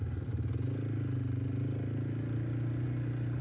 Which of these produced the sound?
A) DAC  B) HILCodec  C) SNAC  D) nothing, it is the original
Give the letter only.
D